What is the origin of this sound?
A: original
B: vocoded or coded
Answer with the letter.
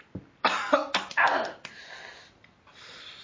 A